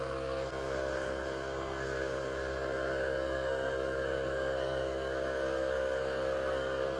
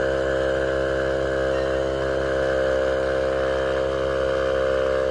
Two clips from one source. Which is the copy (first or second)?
first